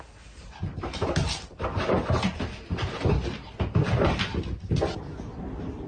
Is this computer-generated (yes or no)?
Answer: no